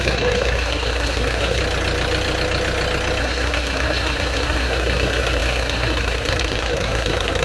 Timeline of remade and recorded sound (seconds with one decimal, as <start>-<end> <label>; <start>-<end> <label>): 0.0-1.6 remade; 1.6-3.2 recorded; 3.2-7.4 remade